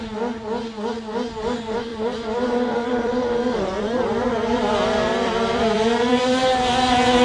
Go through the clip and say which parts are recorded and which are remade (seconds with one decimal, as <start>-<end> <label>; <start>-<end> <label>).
0.0-1.9 recorded; 1.9-6.2 remade; 6.2-7.2 recorded